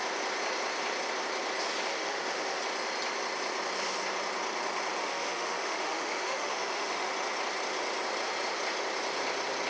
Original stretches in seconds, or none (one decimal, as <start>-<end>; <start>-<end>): 0.0-1.9; 2.6-5.0; 7.1-9.7

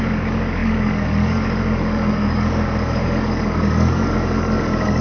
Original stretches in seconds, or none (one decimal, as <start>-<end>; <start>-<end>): none

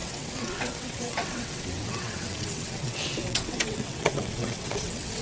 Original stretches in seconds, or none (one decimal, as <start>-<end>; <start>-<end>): none

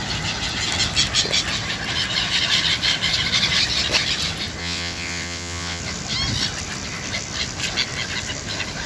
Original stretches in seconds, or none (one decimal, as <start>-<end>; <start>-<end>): 0.0-4.6; 5.8-8.9

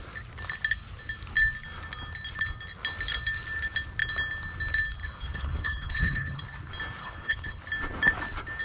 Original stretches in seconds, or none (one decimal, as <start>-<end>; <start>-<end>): 0.0-5.0; 6.4-7.0; 7.6-8.6

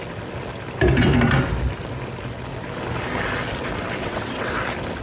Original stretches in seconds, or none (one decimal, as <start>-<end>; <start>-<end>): 0.0-4.0; 4.5-5.0

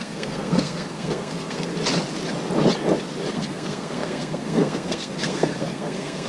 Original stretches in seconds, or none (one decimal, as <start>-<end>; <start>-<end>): 1.7-3.3